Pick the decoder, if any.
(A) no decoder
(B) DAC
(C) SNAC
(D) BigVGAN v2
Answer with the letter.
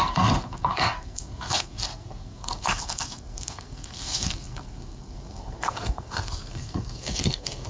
C